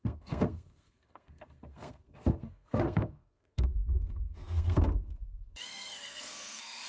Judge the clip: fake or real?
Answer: fake